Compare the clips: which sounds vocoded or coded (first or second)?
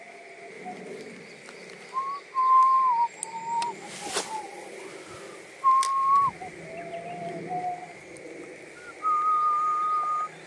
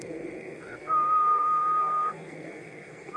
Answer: second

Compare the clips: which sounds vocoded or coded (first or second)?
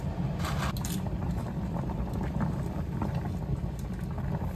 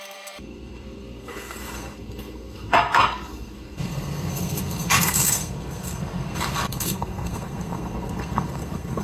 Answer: second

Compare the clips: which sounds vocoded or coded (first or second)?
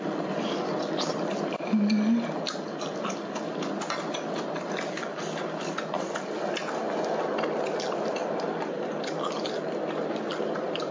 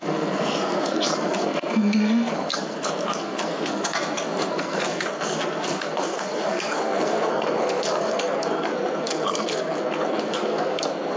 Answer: second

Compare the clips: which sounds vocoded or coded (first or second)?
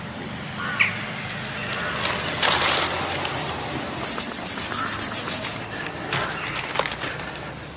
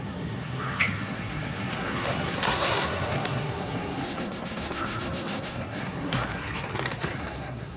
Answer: second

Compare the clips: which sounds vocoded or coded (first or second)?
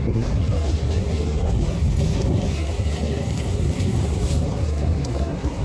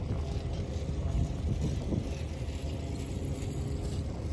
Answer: first